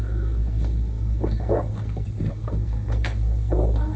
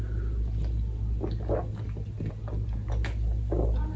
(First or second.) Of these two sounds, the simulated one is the first